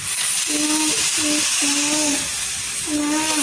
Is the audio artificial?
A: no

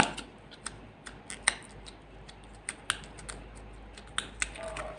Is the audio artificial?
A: no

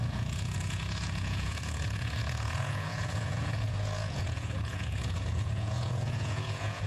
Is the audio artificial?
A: yes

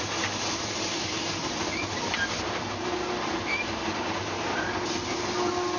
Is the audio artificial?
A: no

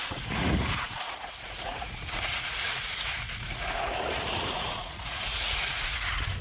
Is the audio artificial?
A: yes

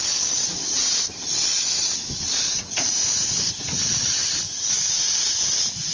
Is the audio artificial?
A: no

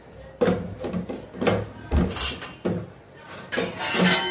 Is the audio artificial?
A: no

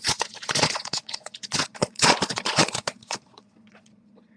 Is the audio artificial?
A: yes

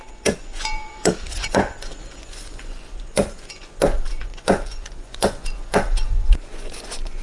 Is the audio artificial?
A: yes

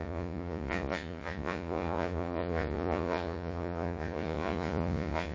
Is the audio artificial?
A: yes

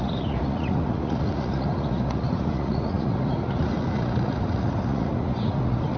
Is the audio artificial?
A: yes